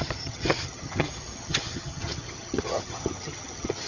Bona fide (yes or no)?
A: no